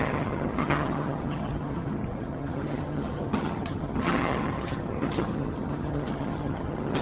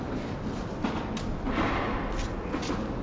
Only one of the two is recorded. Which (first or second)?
second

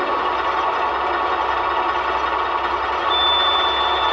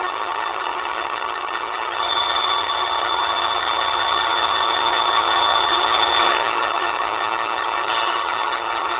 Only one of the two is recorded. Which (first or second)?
first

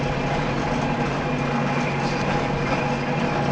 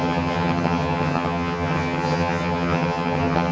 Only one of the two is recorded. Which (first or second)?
first